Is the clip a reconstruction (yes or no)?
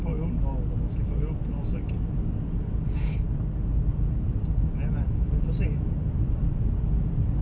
no